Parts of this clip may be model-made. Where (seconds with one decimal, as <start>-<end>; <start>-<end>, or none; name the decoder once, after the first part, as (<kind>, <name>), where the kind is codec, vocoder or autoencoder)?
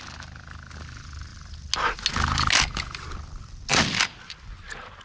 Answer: none